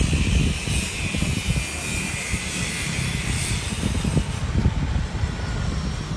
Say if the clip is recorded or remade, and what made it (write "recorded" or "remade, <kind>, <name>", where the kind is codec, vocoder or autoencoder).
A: recorded